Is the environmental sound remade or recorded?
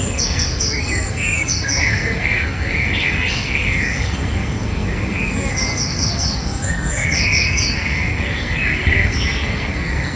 remade